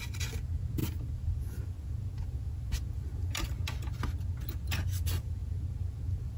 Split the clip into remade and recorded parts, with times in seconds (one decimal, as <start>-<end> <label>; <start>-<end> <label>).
0.0-6.4 recorded